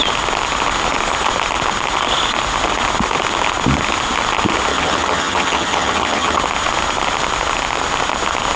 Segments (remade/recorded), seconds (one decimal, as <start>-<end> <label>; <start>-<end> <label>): 0.0-4.7 recorded; 4.7-6.4 remade; 6.4-8.6 recorded